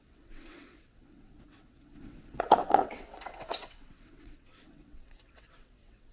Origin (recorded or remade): remade